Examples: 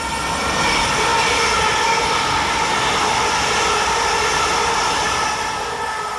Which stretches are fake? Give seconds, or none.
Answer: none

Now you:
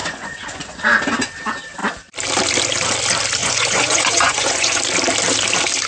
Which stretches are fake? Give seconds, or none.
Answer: 0.0-0.8 (vocoder, Vocos); 3.4-4.8

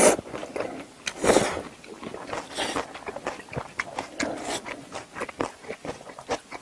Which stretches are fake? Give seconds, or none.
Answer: 0.0-0.4 (vocoder, Vocos); 4.4-4.9; 5.5-6.6

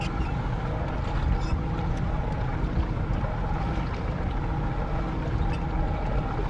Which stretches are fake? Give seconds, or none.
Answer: none

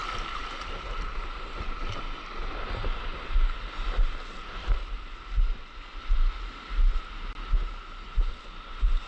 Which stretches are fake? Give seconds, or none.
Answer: none